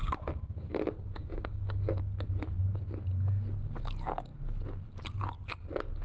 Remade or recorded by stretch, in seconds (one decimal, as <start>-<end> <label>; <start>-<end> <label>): 0.0-2.0 remade; 2.0-6.0 recorded